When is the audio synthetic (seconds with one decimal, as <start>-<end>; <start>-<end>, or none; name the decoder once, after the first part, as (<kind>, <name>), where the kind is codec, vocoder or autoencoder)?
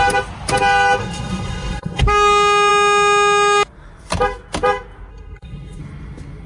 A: 1.0-2.0 (codec, SNAC); 5.1-5.8